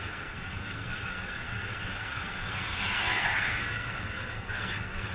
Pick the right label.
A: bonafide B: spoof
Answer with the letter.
B